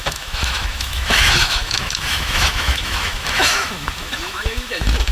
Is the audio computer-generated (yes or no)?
yes